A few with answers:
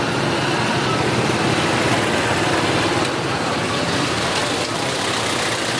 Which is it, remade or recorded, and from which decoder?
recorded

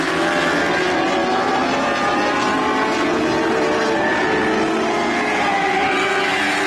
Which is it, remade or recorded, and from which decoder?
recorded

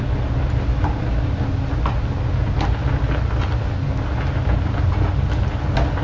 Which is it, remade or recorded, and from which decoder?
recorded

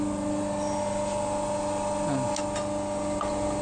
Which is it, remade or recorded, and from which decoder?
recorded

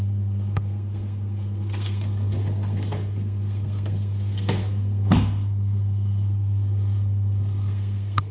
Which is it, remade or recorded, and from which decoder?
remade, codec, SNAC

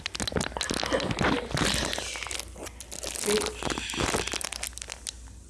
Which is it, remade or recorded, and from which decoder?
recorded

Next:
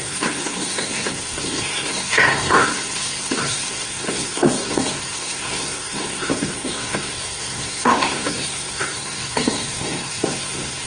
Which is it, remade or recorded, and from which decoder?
remade, codec, SNAC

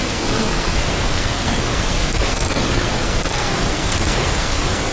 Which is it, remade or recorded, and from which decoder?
remade, codec, SNAC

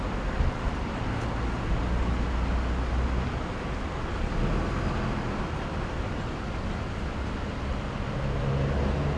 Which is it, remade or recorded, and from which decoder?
recorded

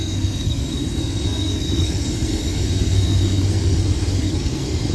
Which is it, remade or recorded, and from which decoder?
remade, codec, SNAC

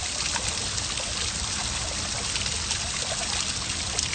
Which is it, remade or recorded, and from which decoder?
recorded